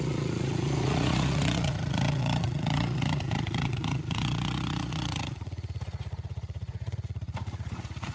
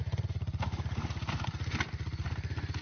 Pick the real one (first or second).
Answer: second